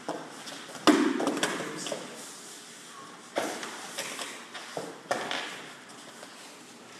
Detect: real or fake real